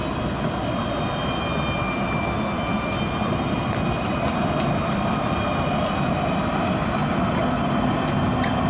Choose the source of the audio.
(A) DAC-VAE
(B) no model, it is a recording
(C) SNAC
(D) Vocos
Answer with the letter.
B